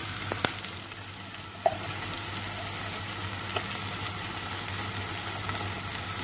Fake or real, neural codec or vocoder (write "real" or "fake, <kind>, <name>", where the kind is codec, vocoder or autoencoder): fake, vocoder, BigVGAN v2